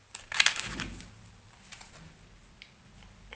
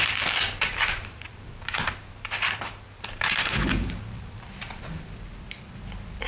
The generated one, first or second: second